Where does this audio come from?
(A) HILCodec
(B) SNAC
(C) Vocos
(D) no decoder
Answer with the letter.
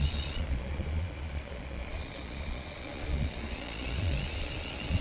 C